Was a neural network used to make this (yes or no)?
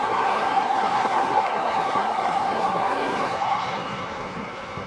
yes